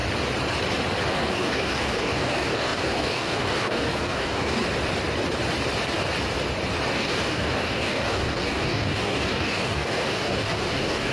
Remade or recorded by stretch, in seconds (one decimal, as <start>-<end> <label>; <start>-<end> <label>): 0.0-1.1 recorded; 1.1-4.6 remade; 4.6-6.9 recorded; 6.9-11.1 remade